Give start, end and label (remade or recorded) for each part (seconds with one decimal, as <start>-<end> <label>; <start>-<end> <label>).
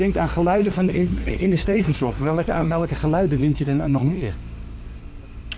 0.0-0.6 recorded; 0.6-2.9 remade; 2.9-3.4 recorded; 3.4-4.3 remade; 4.3-5.6 recorded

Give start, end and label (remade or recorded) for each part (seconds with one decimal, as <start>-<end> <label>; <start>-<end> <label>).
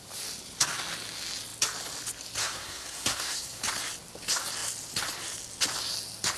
0.0-2.4 recorded; 2.4-3.6 remade; 3.6-6.4 recorded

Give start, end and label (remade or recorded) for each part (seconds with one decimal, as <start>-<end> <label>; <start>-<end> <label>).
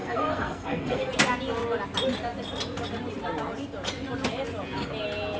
0.0-1.1 remade; 1.1-5.4 recorded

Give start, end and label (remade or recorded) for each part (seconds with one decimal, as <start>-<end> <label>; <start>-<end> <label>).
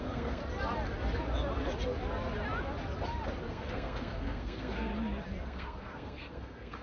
0.0-0.4 remade; 0.4-3.5 recorded; 3.5-4.9 remade; 4.9-5.4 recorded; 5.4-6.8 remade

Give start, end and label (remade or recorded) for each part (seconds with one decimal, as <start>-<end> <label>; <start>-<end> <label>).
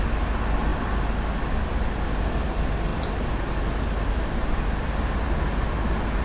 0.0-6.2 recorded